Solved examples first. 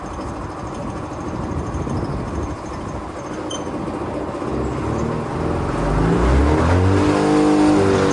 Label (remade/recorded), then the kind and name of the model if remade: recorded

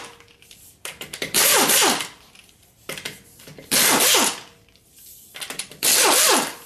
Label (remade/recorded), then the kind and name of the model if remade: recorded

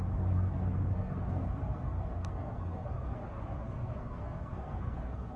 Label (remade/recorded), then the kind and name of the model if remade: remade, codec, SNAC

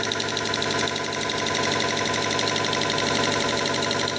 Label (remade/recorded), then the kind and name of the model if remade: recorded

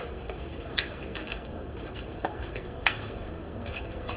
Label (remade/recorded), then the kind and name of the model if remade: remade, codec, SNAC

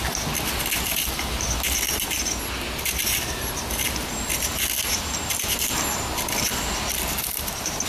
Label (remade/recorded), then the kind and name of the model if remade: recorded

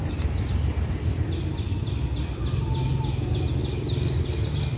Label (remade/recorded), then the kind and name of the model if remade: recorded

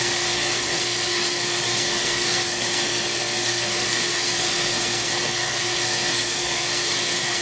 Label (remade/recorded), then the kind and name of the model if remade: remade, codec, SNAC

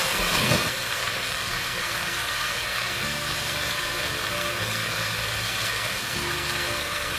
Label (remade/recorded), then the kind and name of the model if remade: remade, codec, SNAC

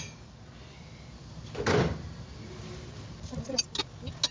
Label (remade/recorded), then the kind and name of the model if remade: recorded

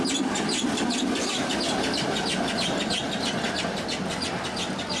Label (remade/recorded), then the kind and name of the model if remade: recorded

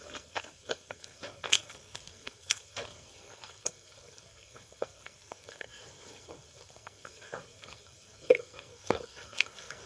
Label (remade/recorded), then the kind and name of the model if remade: remade, codec, SNAC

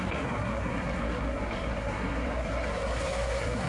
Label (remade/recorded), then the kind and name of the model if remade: remade, codec, SNAC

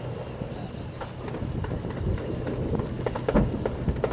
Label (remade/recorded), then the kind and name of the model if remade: recorded